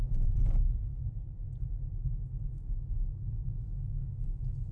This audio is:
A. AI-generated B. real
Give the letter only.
B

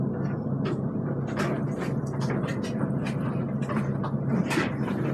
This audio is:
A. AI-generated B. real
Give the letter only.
B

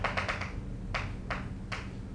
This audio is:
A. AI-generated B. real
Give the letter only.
B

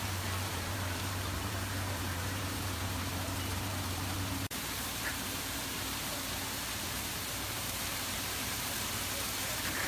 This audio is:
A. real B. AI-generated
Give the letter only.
B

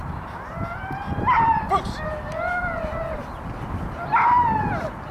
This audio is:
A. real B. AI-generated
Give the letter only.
A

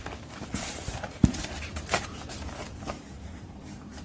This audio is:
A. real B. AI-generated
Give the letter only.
B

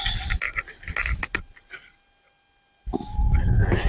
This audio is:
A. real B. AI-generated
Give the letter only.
A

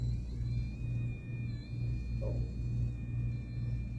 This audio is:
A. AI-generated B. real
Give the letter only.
B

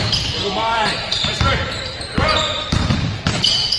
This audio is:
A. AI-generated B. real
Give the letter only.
A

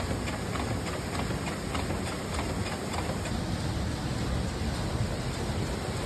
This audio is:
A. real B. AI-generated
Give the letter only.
A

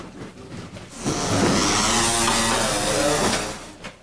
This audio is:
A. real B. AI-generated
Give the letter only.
A